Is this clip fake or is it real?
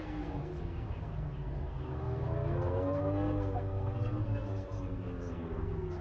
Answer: fake